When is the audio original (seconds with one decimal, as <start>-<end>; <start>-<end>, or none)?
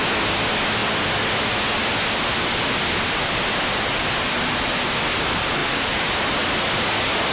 0.0-5.6; 6.1-7.3